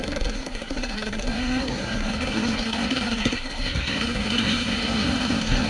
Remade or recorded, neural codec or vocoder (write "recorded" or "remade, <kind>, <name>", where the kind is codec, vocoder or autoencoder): remade, codec, SNAC